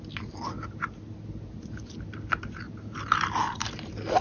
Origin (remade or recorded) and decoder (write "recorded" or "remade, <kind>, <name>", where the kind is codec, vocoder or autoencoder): recorded